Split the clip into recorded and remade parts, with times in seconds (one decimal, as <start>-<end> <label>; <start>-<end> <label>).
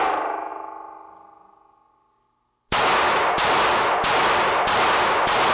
0.0-5.5 recorded